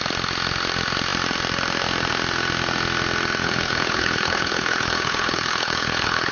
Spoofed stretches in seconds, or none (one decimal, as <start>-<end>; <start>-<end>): 3.4-6.3